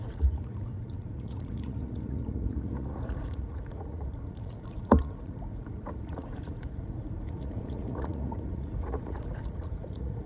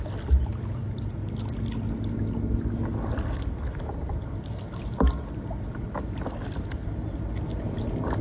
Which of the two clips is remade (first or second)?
first